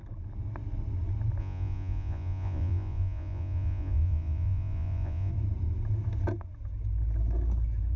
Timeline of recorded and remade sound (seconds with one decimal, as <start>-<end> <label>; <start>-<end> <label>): 0.0-1.4 recorded; 1.4-5.3 remade; 5.3-8.0 recorded